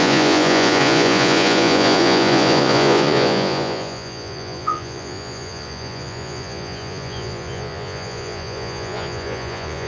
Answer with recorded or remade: remade